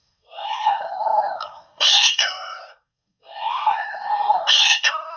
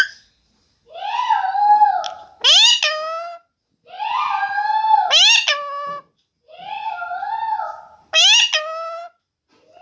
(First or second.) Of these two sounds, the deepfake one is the first